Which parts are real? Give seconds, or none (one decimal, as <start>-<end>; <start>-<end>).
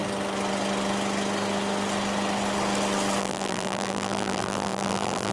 0.0-3.2